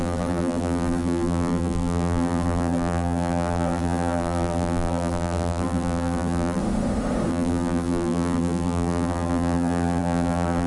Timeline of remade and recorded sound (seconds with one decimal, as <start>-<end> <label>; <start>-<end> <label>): 0.0-6.6 remade; 6.6-7.3 recorded; 7.3-10.7 remade

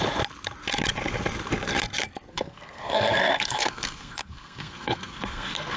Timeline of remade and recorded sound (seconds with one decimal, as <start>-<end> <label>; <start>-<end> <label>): 0.0-2.3 recorded; 2.3-5.8 remade

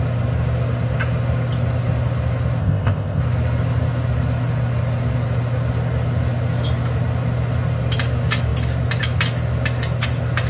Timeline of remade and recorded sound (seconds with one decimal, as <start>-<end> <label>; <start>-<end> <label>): 0.0-2.6 recorded; 2.6-3.2 remade; 3.2-10.5 recorded

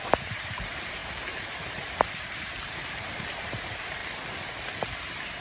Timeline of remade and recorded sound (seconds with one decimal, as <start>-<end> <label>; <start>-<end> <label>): 0.0-4.0 remade; 4.0-4.8 recorded; 4.8-5.4 remade

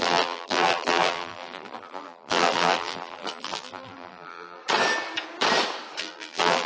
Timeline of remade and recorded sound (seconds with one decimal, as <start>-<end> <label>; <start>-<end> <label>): 0.0-4.6 remade; 4.6-6.0 recorded; 6.0-6.7 remade

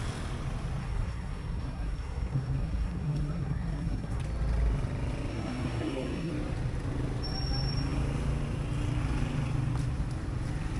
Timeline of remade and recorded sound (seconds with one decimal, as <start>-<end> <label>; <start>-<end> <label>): 0.0-0.8 recorded; 0.8-4.2 remade; 4.2-5.3 recorded; 5.3-6.3 remade; 6.3-10.8 recorded